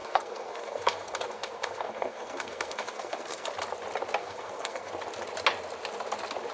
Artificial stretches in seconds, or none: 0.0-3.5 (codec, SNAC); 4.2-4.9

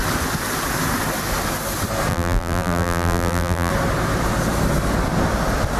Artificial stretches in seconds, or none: 2.1-3.7 (vocoder, BigVGAN v2)